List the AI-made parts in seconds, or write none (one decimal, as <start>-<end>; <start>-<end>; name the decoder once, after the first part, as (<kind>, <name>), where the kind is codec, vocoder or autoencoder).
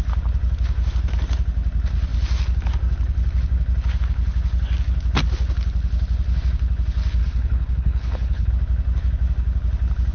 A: 7.2-8.5 (codec, HILCodec)